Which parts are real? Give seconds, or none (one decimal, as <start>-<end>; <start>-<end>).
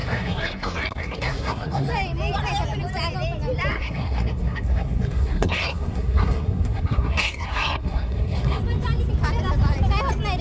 1.9-3.7; 8.6-10.4